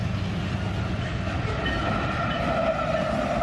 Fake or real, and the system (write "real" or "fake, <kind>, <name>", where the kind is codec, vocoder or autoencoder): real